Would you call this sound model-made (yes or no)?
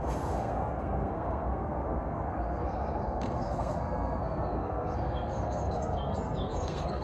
yes